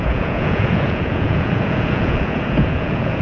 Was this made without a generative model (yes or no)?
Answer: no